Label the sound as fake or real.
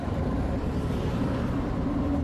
fake